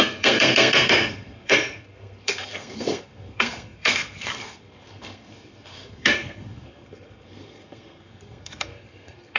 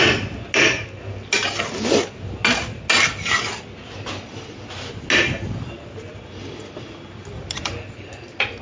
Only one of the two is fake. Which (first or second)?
first